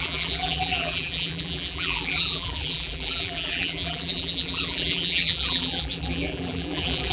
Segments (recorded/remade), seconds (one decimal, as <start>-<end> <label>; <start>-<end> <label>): 0.0-7.1 remade